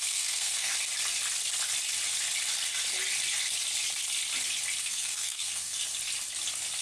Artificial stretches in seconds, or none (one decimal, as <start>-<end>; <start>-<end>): 0.0-0.7; 4.8-5.8